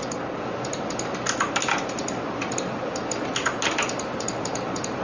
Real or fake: real